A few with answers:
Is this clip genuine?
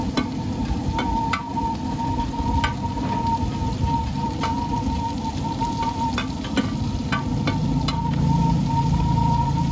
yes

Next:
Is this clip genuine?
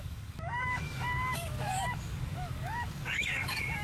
no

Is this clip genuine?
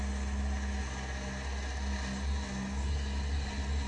yes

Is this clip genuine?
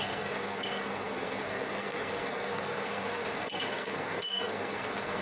no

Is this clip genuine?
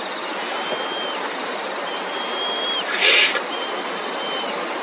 yes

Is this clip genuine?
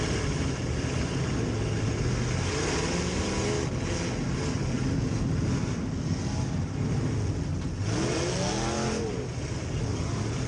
yes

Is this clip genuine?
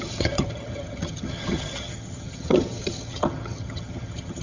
no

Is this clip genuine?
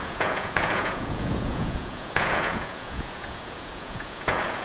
no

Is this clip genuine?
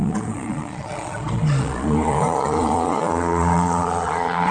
no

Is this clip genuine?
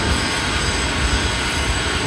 yes